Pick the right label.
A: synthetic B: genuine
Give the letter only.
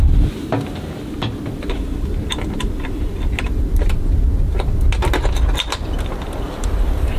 B